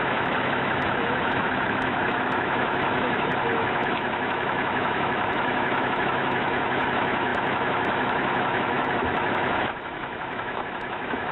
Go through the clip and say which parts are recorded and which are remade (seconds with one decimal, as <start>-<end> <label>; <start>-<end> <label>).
0.0-11.3 remade